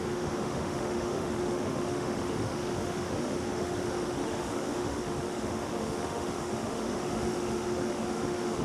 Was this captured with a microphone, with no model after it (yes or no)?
no